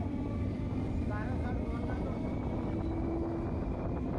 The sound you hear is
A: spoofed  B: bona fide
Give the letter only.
B